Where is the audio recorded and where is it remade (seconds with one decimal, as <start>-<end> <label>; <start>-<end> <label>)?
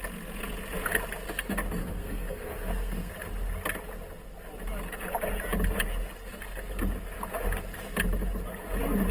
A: 0.0-1.8 recorded; 1.8-3.1 remade; 3.1-9.1 recorded